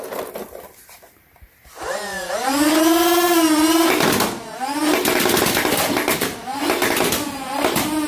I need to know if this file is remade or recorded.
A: recorded